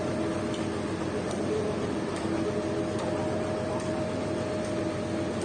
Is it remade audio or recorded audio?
recorded